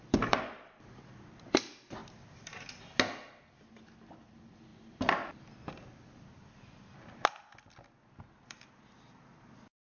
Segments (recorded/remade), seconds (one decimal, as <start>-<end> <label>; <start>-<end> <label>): 0.0-9.8 recorded